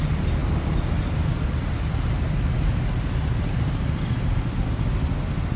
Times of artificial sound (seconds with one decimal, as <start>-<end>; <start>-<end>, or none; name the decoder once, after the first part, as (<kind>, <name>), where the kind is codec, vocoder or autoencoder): none